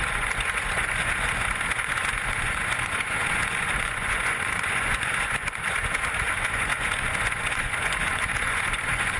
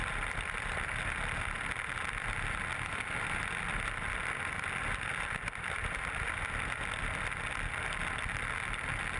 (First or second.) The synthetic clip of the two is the first